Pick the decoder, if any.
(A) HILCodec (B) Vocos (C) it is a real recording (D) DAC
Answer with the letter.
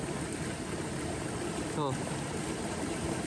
C